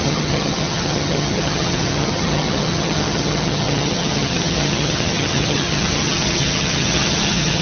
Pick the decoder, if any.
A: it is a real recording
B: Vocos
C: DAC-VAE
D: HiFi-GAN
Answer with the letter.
D